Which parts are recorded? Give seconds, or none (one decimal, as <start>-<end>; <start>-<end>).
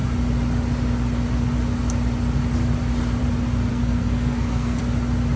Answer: 0.0-3.7; 4.8-5.4